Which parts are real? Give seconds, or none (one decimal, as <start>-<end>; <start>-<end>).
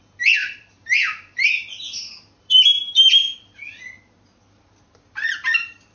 0.0-0.4; 3.6-5.9